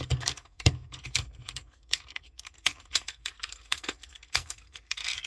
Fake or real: fake